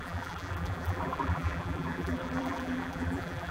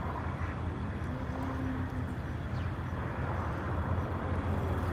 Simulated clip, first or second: first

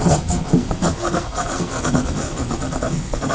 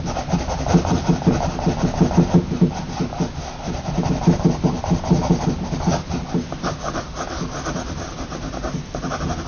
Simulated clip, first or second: first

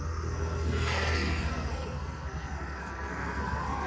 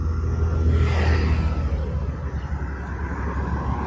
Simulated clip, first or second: first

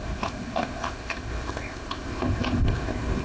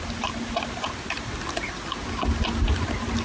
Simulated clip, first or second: first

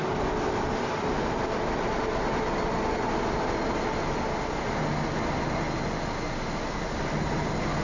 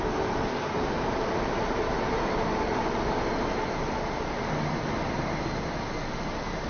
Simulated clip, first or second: second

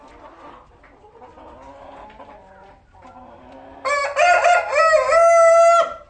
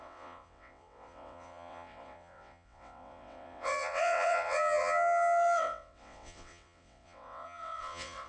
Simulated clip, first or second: second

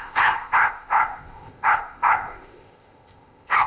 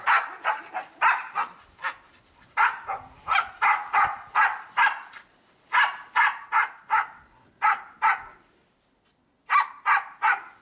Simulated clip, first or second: first